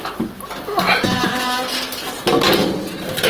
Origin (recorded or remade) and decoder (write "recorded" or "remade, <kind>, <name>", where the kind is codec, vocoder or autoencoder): recorded